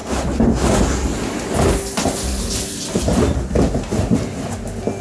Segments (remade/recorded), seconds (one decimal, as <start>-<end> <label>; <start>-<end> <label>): 0.0-5.0 recorded